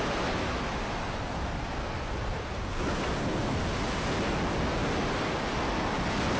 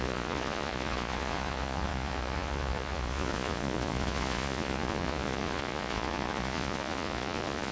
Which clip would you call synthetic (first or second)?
second